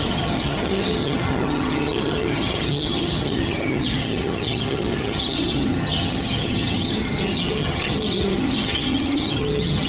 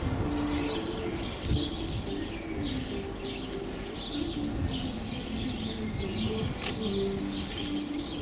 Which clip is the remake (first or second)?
first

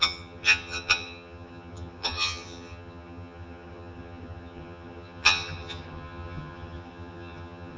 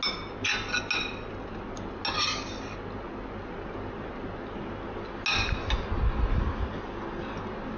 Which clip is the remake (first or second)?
first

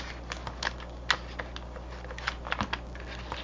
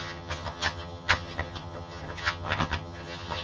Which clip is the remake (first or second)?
second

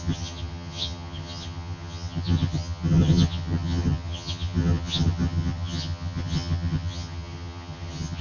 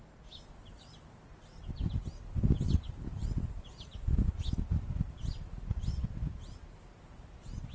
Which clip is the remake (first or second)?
first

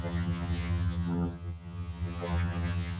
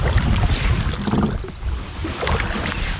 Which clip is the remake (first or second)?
first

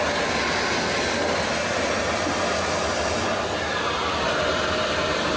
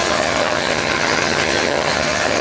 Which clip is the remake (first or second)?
second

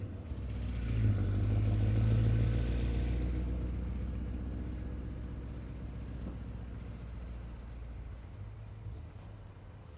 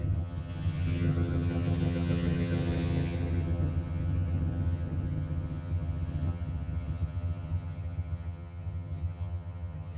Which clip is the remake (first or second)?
second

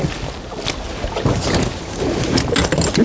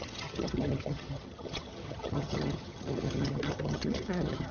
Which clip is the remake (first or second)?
second